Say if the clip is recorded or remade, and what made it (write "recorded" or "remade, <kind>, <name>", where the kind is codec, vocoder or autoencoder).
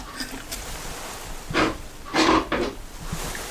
recorded